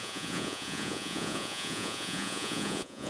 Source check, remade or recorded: remade